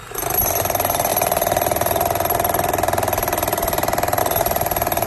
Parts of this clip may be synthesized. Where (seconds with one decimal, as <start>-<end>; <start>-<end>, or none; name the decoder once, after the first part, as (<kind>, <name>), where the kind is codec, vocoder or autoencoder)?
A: 0.0-5.1 (vocoder, BigVGAN v2)